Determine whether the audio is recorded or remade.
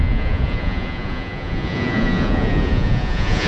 remade